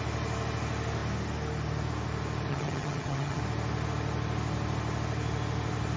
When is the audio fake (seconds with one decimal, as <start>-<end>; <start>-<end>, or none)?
2.5-3.4